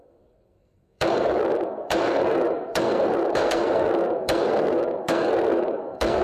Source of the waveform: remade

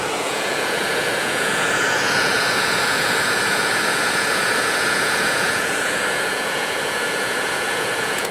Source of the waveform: remade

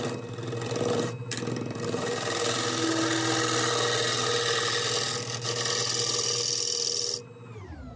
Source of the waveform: recorded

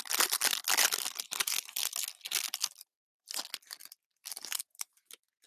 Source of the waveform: recorded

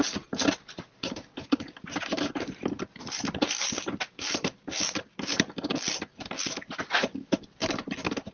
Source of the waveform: recorded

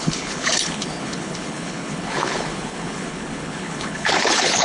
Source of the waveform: remade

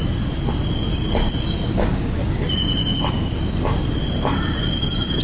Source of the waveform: recorded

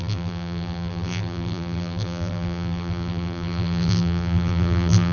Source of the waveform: remade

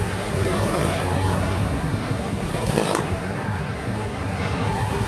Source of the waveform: remade